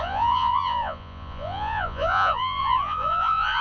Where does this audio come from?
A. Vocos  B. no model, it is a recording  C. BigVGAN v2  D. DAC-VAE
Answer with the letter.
A